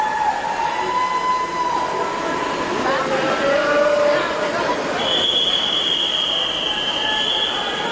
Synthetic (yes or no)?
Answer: no